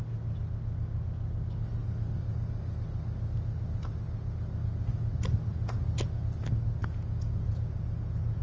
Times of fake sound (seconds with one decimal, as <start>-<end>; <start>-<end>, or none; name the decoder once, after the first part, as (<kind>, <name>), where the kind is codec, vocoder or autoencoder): 5.5-6.2 (vocoder, Vocos); 6.8-8.4